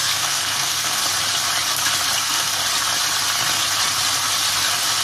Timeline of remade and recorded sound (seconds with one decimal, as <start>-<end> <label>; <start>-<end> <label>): 0.0-1.0 remade; 1.0-2.2 recorded; 2.2-2.6 remade; 2.6-5.0 recorded